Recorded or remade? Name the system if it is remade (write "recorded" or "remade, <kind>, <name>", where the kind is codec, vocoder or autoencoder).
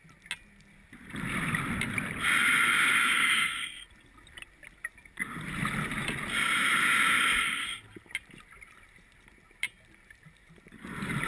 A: recorded